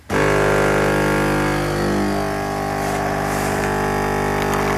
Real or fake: real